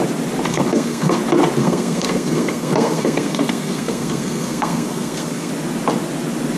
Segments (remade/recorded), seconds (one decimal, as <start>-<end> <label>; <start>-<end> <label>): 0.0-0.5 recorded; 0.5-1.2 remade; 1.2-1.6 recorded; 1.6-5.5 remade; 5.5-6.6 recorded